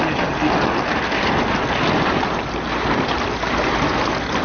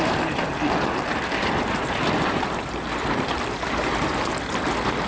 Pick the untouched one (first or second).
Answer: first